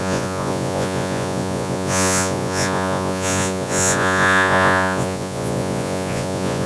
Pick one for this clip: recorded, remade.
remade